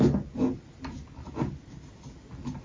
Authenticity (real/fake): real